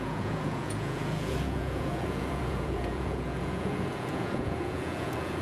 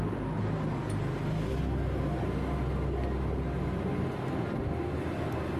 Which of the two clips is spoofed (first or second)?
first